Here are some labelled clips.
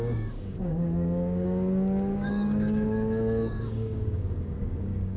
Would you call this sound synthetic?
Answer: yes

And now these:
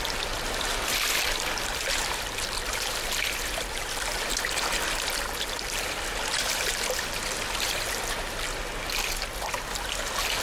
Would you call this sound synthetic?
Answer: no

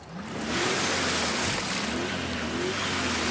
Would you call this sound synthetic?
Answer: no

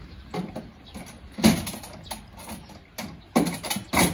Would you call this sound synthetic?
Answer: no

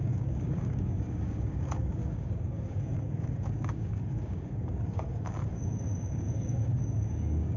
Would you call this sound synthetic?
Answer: yes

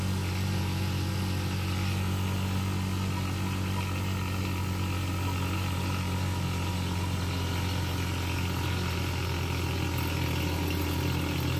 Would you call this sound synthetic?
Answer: no